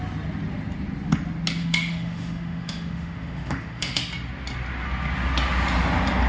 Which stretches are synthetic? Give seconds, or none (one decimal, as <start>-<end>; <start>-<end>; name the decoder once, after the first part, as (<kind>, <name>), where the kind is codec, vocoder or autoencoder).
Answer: 1.6-4.0 (autoencoder, DAC-VAE)